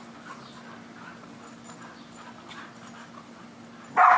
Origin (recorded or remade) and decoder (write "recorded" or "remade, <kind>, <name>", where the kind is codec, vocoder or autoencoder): recorded